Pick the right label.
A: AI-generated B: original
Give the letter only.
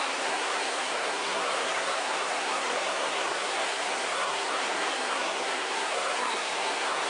A